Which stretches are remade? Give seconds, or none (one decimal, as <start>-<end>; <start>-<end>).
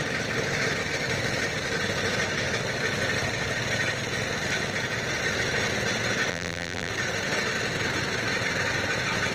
6.3-6.9